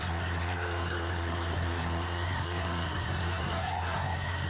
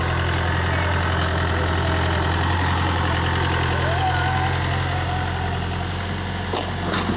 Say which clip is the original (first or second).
second